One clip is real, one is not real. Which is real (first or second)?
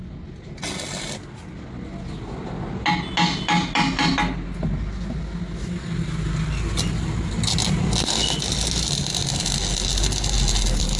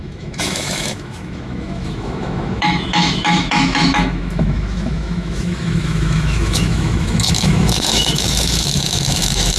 first